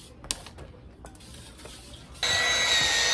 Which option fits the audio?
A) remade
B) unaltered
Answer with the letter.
B